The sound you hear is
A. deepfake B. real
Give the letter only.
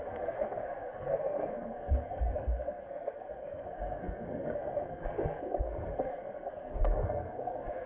A